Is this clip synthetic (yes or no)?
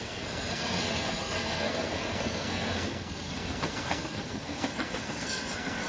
yes